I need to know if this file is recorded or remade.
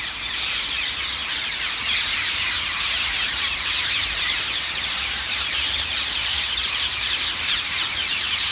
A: remade